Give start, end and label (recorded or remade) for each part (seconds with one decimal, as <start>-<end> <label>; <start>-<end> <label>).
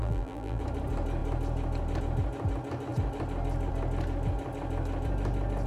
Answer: 0.0-0.6 remade; 0.6-5.7 recorded